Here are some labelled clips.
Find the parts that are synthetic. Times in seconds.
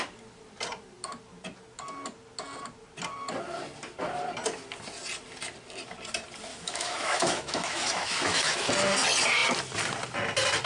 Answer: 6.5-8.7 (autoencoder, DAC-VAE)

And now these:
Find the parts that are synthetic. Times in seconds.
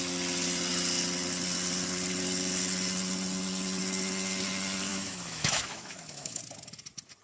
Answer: 4.9-6.4 (autoencoder, DAC-VAE)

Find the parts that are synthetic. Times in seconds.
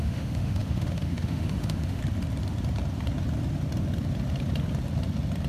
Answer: 0.0-2.0 (autoencoder, DAC-VAE)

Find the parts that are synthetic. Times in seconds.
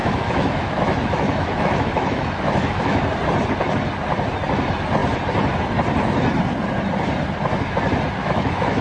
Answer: 0.0-3.0 (autoencoder, DAC-VAE); 8.2-8.8